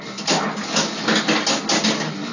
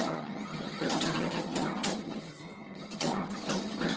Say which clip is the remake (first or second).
second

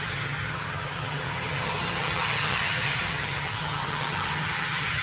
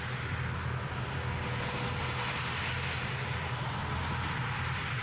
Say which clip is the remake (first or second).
first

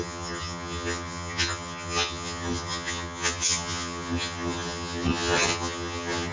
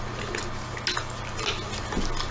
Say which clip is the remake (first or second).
first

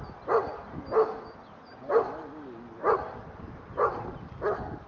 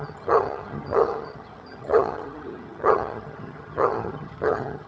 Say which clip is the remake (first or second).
second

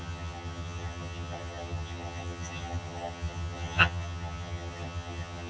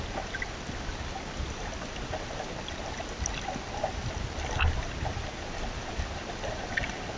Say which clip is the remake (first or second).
first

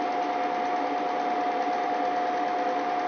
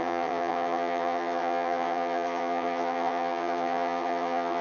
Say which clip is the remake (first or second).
second